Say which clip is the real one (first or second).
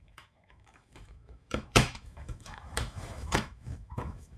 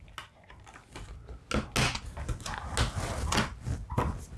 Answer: second